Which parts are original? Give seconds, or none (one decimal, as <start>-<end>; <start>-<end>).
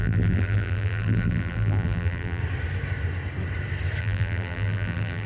2.4-4.0